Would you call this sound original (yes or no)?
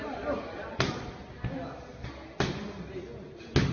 yes